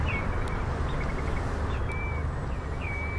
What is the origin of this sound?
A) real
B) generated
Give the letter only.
A